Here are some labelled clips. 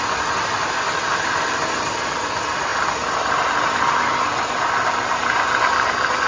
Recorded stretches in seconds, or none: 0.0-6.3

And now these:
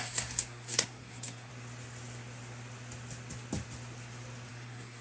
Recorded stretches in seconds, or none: 1.5-4.5

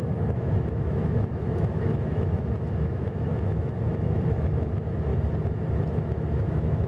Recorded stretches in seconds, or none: 5.1-5.9

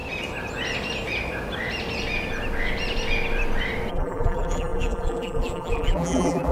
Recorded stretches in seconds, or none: 0.0-3.9